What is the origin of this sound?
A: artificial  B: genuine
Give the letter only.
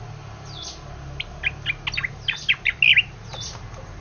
B